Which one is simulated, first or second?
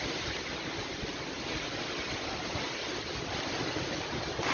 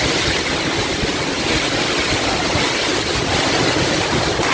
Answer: first